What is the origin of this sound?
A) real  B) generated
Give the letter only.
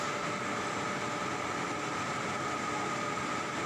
A